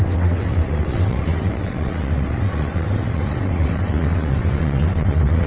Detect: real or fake fake